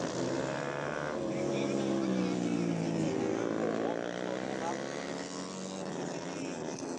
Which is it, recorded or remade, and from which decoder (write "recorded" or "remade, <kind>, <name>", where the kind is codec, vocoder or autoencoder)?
recorded